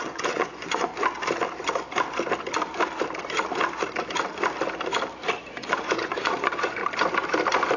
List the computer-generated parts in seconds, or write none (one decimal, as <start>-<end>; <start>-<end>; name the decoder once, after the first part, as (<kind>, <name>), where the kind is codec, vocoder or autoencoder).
0.0-0.9 (vocoder, Vocos); 5.5-6.8